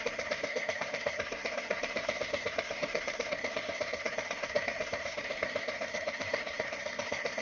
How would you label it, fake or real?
fake